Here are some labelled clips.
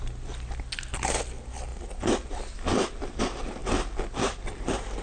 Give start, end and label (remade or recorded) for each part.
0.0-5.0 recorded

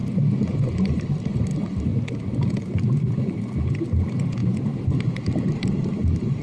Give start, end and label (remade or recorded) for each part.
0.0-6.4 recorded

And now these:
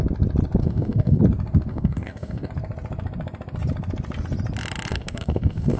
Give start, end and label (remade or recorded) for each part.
0.0-0.6 recorded; 0.6-1.2 remade; 1.2-1.7 recorded; 1.7-2.5 remade; 2.5-4.9 recorded; 4.9-5.8 remade